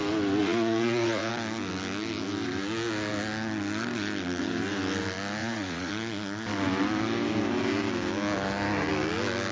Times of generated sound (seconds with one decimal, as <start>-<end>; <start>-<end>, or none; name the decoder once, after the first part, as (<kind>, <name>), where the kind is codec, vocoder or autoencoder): 0.4-1.3 (vocoder, Vocos); 5.4-5.9